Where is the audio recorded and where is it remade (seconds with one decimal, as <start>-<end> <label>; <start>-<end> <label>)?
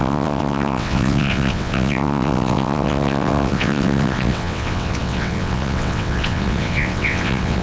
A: 0.0-7.6 remade